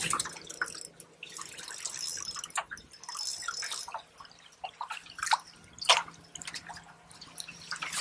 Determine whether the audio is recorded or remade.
recorded